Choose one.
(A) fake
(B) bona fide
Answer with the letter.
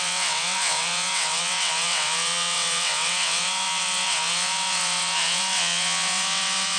A